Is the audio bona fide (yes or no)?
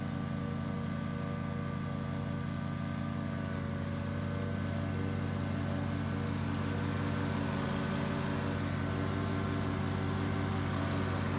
yes